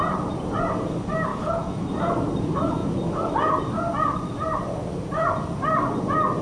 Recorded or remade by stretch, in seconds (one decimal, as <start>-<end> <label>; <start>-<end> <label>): 0.0-1.3 recorded; 1.3-1.9 remade; 1.9-6.4 recorded